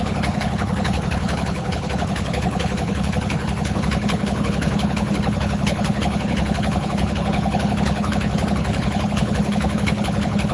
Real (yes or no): no